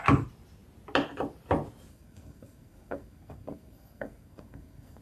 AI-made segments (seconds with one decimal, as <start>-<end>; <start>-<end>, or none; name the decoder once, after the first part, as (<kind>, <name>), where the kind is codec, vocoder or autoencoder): 1.9-5.0 (codec, SNAC)